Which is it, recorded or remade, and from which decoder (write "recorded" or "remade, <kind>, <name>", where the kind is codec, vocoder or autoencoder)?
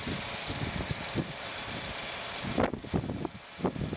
recorded